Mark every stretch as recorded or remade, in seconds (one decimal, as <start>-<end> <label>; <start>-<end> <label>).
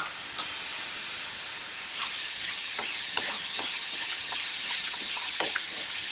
0.0-2.3 recorded; 2.3-6.1 remade